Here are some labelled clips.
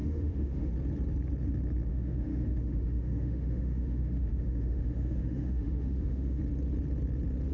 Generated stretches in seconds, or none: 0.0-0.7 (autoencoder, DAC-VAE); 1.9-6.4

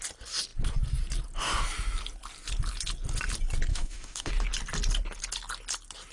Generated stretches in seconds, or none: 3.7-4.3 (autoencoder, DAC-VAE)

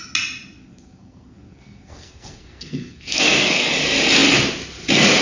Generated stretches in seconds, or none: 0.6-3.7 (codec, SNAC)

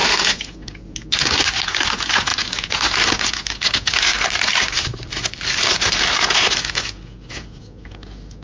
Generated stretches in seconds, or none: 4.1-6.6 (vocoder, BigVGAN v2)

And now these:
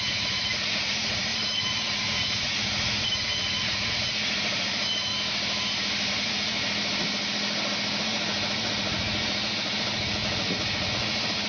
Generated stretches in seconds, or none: 0.0-5.1 (vocoder, Vocos); 6.1-6.5; 8.0-11.5